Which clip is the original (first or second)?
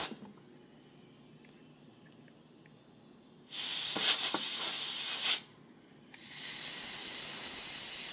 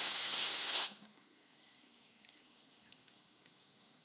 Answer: first